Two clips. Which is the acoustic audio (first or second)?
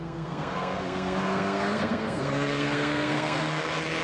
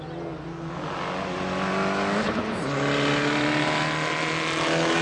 second